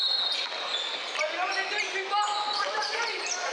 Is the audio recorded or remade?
recorded